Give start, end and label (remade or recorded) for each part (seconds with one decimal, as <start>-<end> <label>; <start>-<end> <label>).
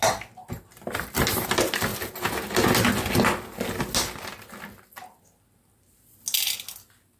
0.0-7.2 recorded